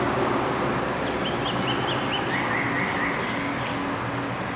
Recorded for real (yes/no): yes